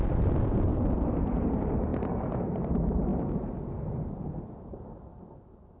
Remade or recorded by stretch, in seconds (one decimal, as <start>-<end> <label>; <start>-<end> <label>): 0.0-3.1 remade; 3.1-4.4 recorded; 4.4-5.8 remade